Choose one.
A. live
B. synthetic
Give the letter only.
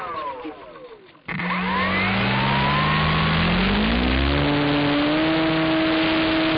A